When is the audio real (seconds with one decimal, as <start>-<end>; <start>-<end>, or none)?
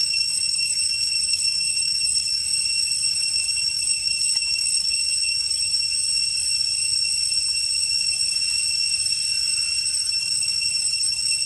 2.5-3.1; 5.9-9.8